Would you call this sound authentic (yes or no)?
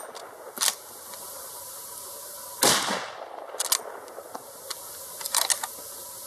yes